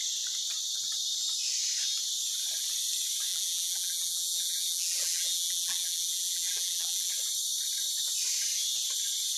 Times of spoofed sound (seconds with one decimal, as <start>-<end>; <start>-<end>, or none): 3.3-7.1